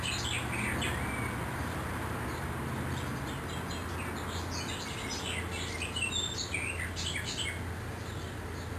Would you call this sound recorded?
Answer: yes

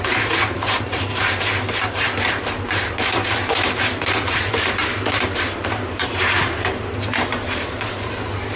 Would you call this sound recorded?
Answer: no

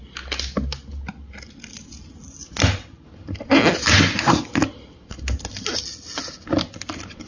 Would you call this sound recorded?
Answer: yes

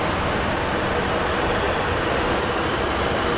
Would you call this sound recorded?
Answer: no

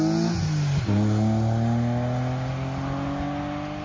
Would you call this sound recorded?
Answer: yes